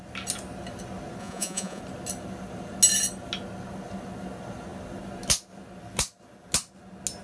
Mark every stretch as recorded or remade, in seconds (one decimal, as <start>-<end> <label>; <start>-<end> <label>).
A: 0.0-1.2 recorded; 1.2-1.8 remade; 1.8-7.2 recorded